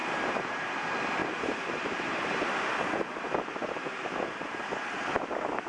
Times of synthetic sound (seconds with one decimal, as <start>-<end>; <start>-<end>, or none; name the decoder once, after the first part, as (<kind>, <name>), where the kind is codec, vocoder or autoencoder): 0.0-0.6 (vocoder, BigVGAN v2); 1.2-4.6